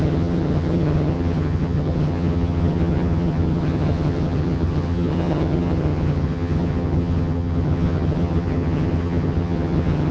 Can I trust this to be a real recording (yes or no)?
no